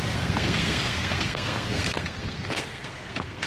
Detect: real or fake fake